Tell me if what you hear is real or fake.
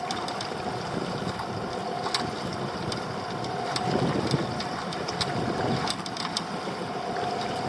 real